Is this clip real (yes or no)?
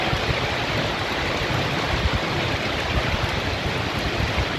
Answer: yes